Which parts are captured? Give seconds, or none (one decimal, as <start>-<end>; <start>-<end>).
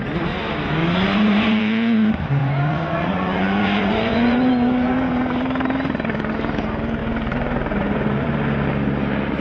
0.0-0.8; 1.6-2.4; 4.5-7.0; 8.3-9.4